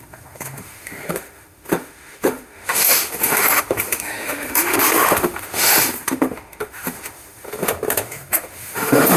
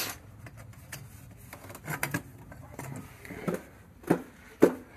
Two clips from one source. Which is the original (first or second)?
second